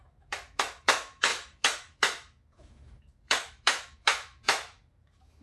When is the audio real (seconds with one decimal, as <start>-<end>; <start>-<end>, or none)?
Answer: none